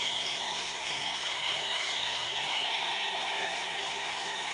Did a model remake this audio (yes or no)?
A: yes